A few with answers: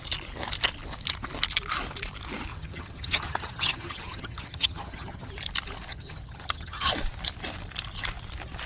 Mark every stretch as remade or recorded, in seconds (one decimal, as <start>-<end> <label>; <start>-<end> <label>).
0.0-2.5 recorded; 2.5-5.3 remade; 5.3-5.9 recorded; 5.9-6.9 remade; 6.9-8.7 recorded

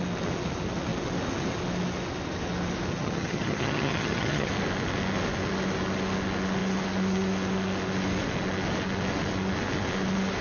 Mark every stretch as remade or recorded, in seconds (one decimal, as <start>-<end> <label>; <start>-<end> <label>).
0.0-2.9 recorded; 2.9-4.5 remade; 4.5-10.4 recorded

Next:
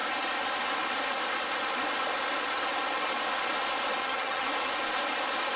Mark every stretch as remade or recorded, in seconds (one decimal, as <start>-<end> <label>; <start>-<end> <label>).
0.0-4.0 recorded; 4.0-4.5 remade; 4.5-5.6 recorded